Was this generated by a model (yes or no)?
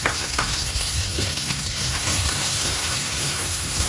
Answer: yes